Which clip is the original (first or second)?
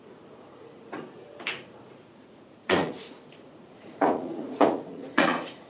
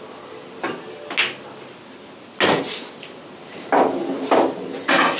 second